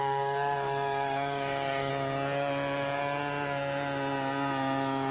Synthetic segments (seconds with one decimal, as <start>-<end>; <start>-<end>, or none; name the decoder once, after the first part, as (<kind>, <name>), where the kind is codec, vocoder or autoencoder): 0.0-1.9 (codec, DAC)